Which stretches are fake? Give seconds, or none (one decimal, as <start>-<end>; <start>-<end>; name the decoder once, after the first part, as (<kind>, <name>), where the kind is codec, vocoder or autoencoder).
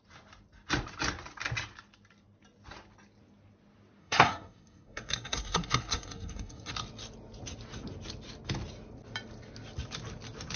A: 4.0-6.7 (codec, SNAC)